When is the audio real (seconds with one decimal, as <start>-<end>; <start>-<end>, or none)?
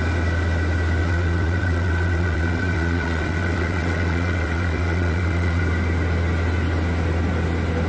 0.0-1.0; 5.6-7.9